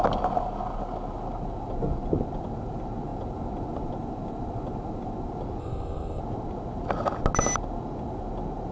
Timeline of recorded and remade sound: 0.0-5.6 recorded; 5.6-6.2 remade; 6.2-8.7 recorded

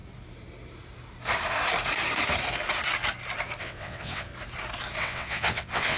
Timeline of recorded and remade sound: 0.0-3.6 recorded; 3.6-4.3 remade; 4.3-5.0 recorded; 5.0-6.0 remade

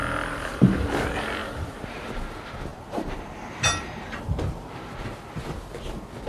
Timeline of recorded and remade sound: 0.0-0.9 remade; 0.9-1.4 recorded; 1.4-2.1 remade; 2.1-2.7 recorded; 2.7-4.9 remade; 4.9-6.3 recorded

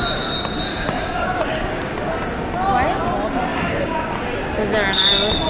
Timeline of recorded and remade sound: 0.0-0.7 recorded; 0.7-2.1 remade; 2.1-3.5 recorded; 3.5-4.1 remade; 4.1-5.5 recorded

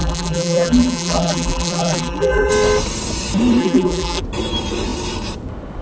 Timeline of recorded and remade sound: 0.0-2.5 remade; 2.5-3.6 recorded; 3.6-4.2 remade; 4.2-5.8 recorded

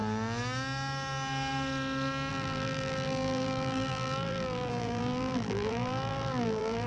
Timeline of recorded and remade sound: 0.0-2.3 recorded; 2.3-6.9 remade

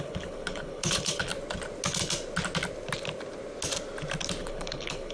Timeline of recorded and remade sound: 0.0-1.3 remade; 1.3-4.4 recorded; 4.4-5.1 remade